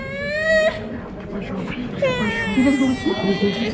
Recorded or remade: recorded